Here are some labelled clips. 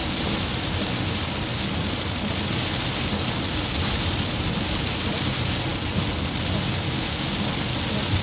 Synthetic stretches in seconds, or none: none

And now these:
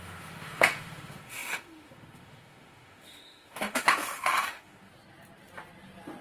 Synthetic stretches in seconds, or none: 0.0-4.9

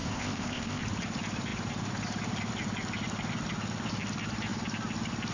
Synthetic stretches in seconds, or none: 0.0-0.8